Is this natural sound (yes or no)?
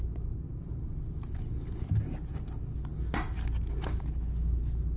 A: yes